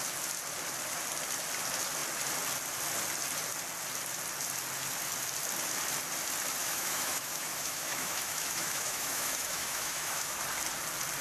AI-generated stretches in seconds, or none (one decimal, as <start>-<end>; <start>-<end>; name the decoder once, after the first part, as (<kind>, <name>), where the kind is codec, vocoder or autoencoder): 6.6-10.4 (autoencoder, DAC-VAE)